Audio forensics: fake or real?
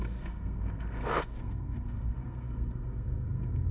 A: fake